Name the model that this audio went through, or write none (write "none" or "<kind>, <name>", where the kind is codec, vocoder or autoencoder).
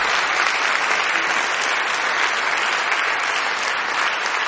none